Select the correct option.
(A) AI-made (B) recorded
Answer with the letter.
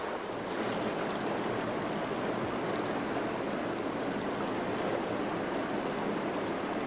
B